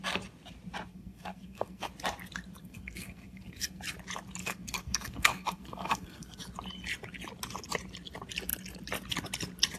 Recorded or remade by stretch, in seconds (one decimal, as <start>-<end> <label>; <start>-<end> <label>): 0.0-0.9 recorded; 0.9-1.9 remade; 1.9-2.6 recorded; 2.6-3.8 remade; 3.8-4.4 recorded; 4.4-6.4 remade; 6.4-9.8 recorded